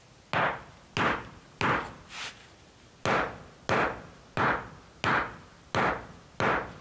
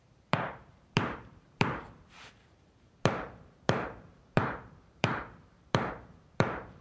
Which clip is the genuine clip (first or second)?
first